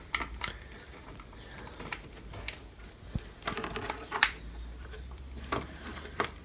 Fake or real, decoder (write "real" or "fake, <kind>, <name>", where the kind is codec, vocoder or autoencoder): fake, vocoder, BigVGAN v2